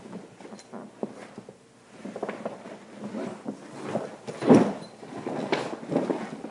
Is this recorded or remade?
recorded